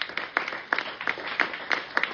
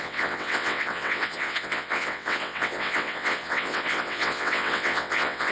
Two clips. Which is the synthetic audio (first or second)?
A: second